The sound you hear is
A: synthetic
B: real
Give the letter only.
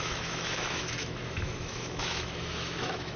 A